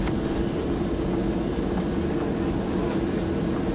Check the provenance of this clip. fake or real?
real